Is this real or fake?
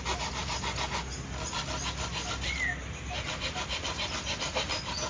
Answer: real